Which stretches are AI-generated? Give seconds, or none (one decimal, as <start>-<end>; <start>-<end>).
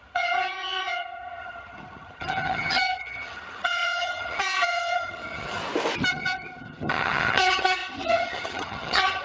0.0-5.6; 6.1-9.2